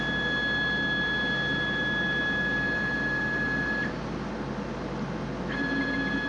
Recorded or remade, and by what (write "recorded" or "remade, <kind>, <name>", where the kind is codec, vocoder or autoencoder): recorded